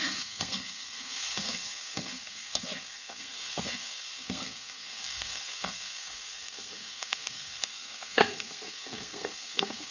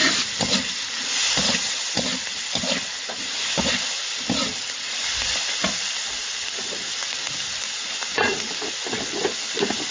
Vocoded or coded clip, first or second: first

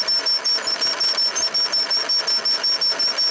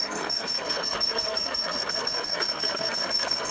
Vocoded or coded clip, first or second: second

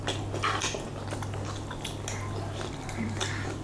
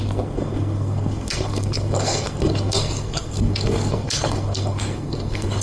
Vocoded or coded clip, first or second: second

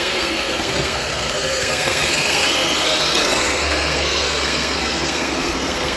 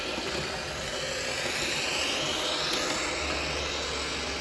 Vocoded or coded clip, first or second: first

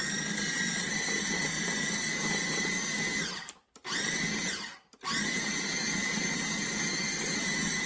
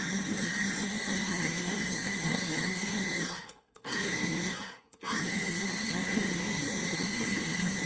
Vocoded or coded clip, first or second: second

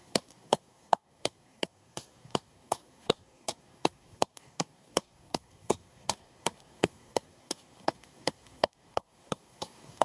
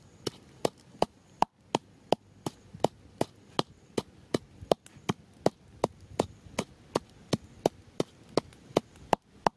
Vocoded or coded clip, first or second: first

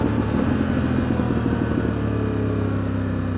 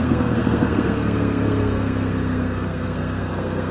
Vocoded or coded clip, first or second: second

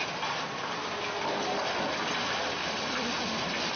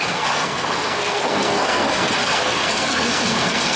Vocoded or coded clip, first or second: second